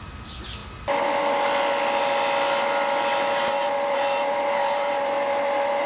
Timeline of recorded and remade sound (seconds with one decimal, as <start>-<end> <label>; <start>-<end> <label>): 0.0-5.9 recorded